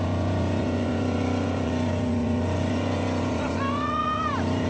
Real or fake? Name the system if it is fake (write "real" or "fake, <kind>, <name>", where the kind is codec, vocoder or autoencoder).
fake, vocoder, Vocos